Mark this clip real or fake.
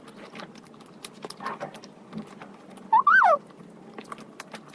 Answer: real